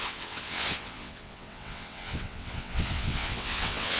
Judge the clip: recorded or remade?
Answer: remade